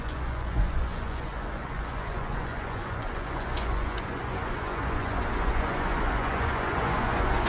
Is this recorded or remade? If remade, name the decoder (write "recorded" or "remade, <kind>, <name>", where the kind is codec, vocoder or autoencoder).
remade, vocoder, Vocos